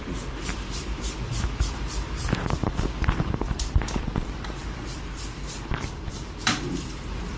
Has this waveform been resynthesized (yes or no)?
yes